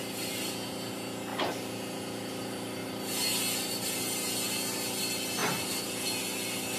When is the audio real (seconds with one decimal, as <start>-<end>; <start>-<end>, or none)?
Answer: 0.0-6.8